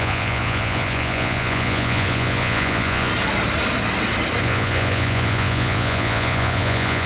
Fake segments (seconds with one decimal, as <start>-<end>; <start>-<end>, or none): 0.0-3.1; 4.4-7.1